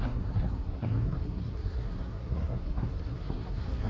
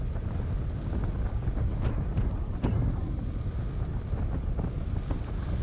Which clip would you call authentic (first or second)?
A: second